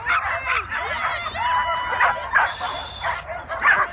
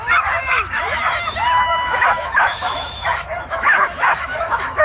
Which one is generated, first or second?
second